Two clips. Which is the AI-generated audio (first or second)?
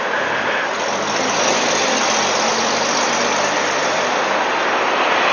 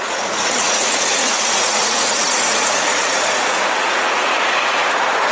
second